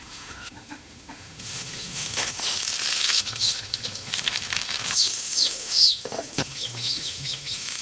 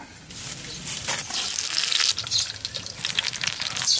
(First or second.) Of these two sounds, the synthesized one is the first